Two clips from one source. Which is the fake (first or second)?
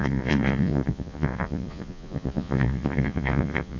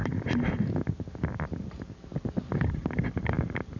first